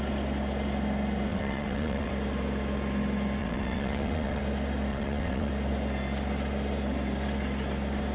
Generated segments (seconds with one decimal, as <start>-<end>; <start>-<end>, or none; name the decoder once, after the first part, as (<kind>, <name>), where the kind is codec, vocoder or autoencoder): 1.3-2.1 (vocoder, WaveNeXt); 3.4-4.4; 4.9-5.5